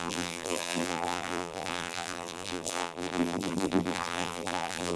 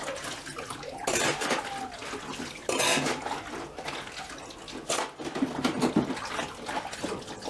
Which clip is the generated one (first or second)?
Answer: first